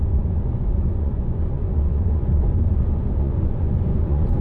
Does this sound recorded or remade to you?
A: remade